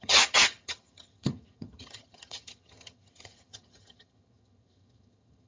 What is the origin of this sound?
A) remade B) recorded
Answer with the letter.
A